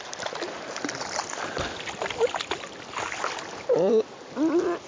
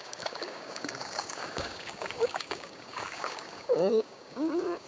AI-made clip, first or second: second